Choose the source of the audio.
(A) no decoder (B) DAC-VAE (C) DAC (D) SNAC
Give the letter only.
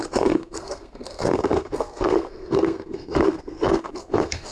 D